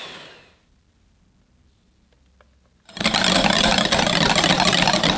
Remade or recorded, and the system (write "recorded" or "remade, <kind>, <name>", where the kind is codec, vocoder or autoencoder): recorded